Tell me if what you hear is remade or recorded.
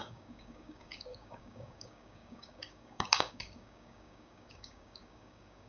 remade